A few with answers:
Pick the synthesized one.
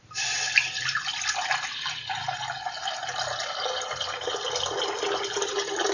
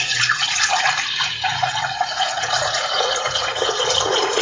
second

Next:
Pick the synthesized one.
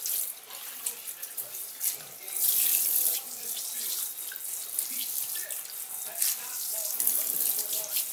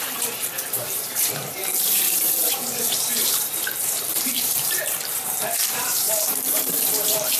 second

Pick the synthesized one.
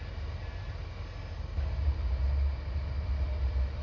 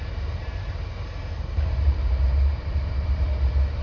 second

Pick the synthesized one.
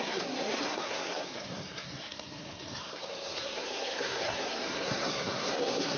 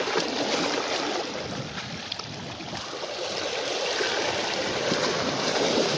first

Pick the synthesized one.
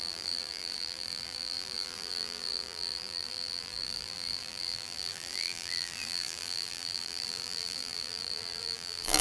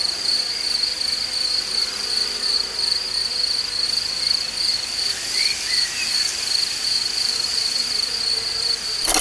first